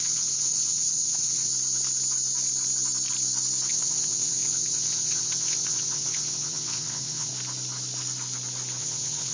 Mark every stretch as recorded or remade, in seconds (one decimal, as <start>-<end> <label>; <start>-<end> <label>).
0.0-1.5 remade; 1.5-3.7 recorded; 3.7-7.3 remade; 7.3-8.8 recorded; 8.8-9.3 remade